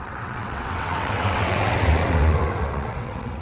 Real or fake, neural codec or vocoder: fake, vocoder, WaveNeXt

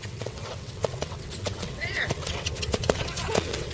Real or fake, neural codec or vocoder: fake, vocoder, WaveNeXt